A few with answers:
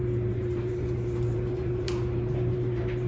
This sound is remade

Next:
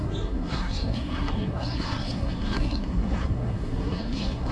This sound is remade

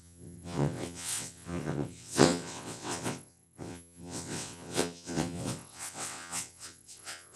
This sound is remade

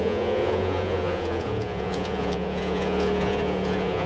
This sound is remade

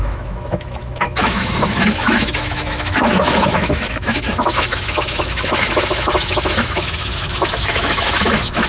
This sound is remade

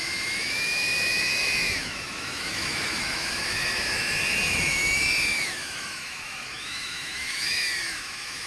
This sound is remade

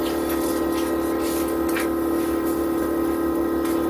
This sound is recorded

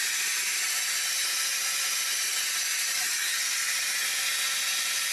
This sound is recorded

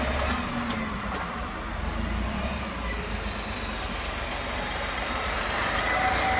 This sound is recorded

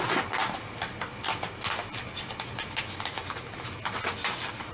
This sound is recorded